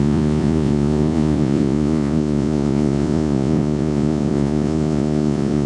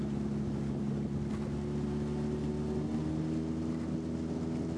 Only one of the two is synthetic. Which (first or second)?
first